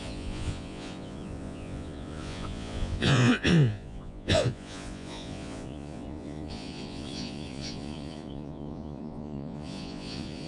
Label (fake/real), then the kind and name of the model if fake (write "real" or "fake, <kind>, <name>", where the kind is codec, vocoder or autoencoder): fake, vocoder, Vocos